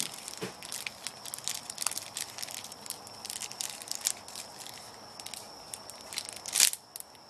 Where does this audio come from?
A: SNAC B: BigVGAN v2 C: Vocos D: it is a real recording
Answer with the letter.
D